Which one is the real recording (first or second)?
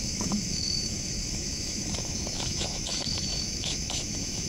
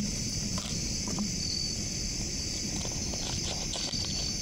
second